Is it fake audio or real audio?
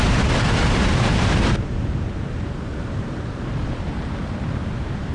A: fake